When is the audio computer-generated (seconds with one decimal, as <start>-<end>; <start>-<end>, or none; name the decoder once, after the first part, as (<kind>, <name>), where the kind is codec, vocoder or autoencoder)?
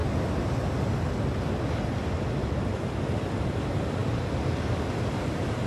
none